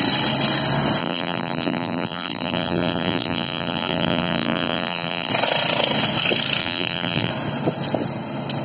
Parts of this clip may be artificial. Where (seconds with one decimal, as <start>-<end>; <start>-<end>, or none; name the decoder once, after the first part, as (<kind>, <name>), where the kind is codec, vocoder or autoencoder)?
1.0-5.3 (vocoder, BigVGAN v2); 6.6-7.3